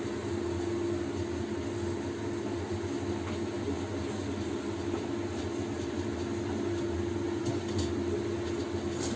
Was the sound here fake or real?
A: real